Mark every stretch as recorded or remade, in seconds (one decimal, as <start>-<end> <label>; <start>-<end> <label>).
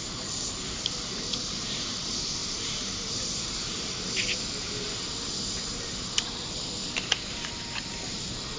0.0-8.6 remade